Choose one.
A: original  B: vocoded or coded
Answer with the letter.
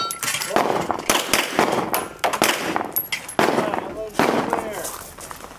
A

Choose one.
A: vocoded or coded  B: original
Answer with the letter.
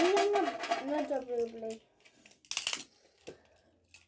B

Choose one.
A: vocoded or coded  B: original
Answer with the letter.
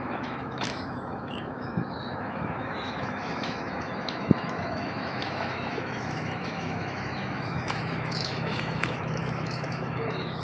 A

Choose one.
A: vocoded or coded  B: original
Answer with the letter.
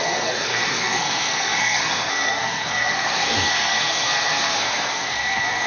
A